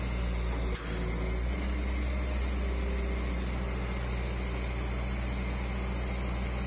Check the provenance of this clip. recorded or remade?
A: recorded